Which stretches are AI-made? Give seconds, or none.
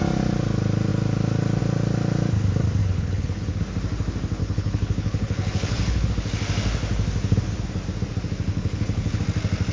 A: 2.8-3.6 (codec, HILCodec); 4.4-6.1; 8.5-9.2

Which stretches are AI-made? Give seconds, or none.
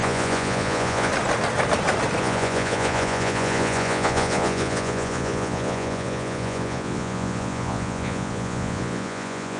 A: 0.0-1.1 (vocoder, Vocos); 2.2-9.6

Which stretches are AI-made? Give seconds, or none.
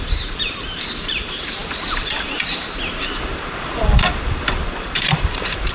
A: 0.0-5.7 (vocoder, BigVGAN v2)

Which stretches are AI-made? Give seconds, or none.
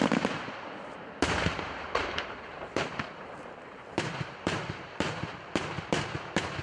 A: 1.5-5.5 (vocoder, BigVGAN v2)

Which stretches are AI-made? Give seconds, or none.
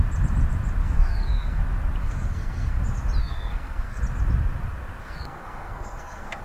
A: 0.8-1.6 (codec, SNAC); 2.0-2.8; 3.2-4.0; 5.0-6.4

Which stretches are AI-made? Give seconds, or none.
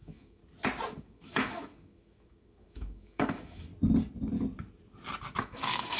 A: 0.0-0.4 (autoencoder, DAC-VAE); 1.0-3.7; 5.4-6.0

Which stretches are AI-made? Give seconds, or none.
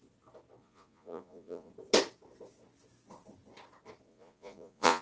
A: 0.6-1.7 (vocoder, Vocos); 4.1-5.0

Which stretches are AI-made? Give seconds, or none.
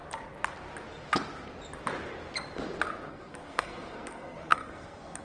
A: 3.1-5.2 (codec, SNAC)